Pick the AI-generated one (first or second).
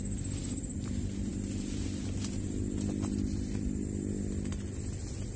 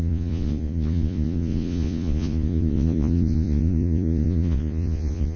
second